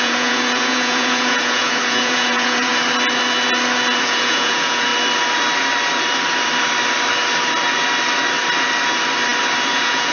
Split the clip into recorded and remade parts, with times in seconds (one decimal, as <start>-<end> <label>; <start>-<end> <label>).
0.0-2.7 remade; 2.7-4.0 recorded; 4.0-4.9 remade; 4.9-9.7 recorded; 9.7-10.1 remade